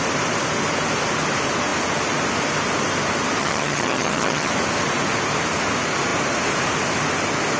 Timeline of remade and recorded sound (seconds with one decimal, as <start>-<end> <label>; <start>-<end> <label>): 0.0-3.4 recorded; 3.4-4.5 remade; 4.5-7.6 recorded